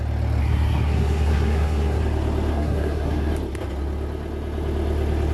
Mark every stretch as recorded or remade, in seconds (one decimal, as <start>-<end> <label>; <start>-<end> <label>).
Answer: 0.0-0.4 recorded; 0.4-2.0 remade; 2.0-2.5 recorded; 2.5-3.3 remade; 3.3-5.3 recorded